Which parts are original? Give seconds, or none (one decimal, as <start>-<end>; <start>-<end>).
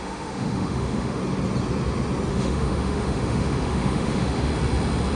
1.2-2.3; 4.5-5.2